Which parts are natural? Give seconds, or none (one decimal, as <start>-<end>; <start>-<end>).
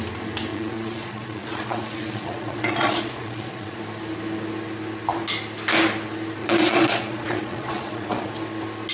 0.0-0.5; 3.8-6.4; 8.3-8.9